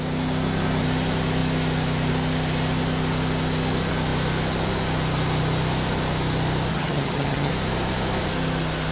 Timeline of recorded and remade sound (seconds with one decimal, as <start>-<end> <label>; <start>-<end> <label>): 0.0-6.7 recorded; 6.7-7.5 remade; 7.5-8.9 recorded